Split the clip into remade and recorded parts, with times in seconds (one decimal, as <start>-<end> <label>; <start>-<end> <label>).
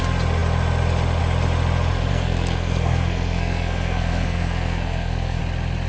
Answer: 0.0-2.1 recorded; 2.1-5.4 remade; 5.4-5.9 recorded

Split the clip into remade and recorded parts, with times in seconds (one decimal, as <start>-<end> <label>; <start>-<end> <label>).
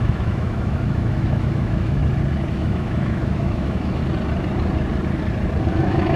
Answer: 0.0-2.0 remade; 2.0-2.5 recorded; 2.5-4.0 remade; 4.0-5.7 recorded; 5.7-6.2 remade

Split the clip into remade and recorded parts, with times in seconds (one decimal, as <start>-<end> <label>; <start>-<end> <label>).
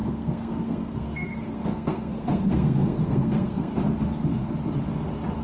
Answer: 0.0-3.7 remade; 3.7-5.4 recorded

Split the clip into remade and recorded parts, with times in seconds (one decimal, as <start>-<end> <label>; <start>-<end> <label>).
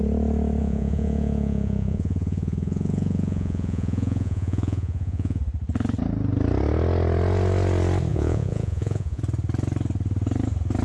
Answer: 0.0-0.6 recorded; 0.6-5.4 remade; 5.4-8.1 recorded; 8.1-9.2 remade; 9.2-10.8 recorded